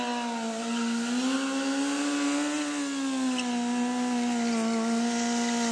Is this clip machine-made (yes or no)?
no